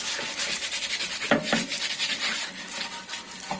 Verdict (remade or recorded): recorded